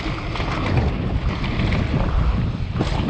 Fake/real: real